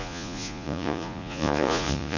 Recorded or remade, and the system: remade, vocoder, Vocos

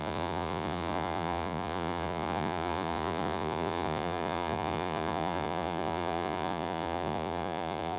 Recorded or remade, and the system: remade, vocoder, Vocos